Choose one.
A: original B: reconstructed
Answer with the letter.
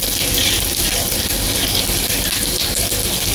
A